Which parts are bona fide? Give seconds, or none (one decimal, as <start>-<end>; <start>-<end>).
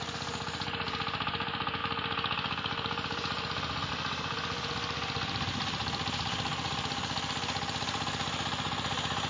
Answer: 0.0-9.3